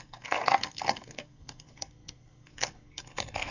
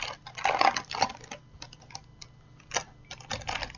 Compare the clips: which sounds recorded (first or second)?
second